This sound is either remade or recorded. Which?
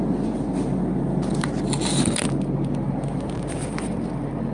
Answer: recorded